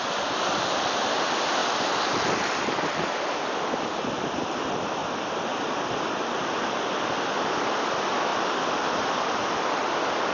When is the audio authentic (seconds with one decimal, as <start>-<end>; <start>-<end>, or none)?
0.0-10.3